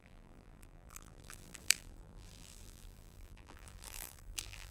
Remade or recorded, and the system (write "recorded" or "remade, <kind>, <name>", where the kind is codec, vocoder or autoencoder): remade, vocoder, BigVGAN v2